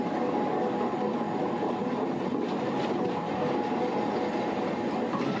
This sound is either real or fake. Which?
real